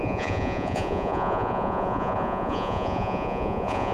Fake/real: fake